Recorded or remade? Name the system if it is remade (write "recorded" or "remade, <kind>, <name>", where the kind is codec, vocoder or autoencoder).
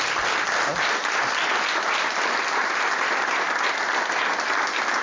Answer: recorded